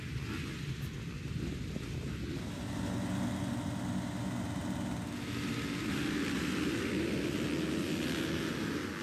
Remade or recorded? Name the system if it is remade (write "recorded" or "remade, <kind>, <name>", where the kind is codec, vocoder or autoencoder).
recorded